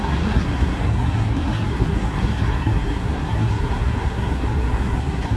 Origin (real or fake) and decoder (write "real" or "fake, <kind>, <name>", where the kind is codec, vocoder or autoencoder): fake, codec, SNAC